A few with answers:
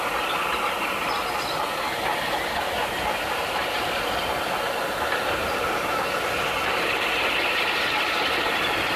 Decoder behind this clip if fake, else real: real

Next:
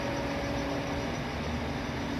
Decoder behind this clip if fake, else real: real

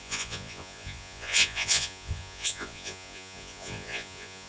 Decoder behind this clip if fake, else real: fake, vocoder, Vocos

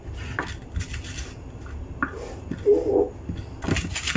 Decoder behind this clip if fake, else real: real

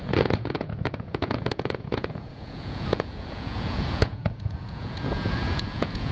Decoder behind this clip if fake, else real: fake, vocoder, Vocos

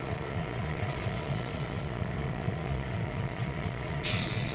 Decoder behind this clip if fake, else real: fake, vocoder, Vocos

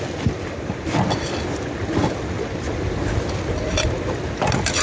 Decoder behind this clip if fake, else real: real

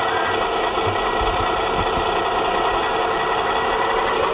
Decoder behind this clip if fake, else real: real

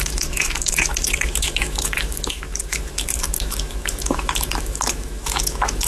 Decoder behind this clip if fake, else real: fake, autoencoder, DAC-VAE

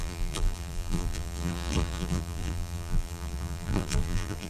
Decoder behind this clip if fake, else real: fake, vocoder, BigVGAN v2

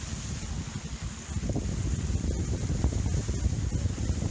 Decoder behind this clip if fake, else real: real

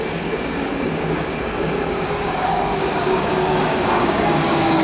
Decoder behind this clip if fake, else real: fake, codec, DAC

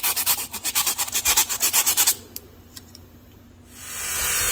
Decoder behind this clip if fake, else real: fake, vocoder, BigVGAN v2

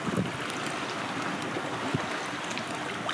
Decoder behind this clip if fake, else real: real